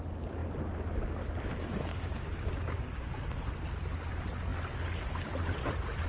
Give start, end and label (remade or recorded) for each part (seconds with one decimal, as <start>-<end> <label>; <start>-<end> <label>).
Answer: 0.0-1.9 recorded; 1.9-3.4 remade; 3.4-6.1 recorded